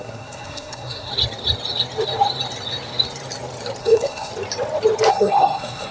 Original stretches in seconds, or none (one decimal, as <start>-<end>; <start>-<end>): 1.1-3.8; 4.3-5.1